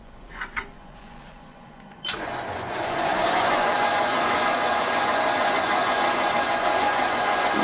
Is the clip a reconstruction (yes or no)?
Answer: yes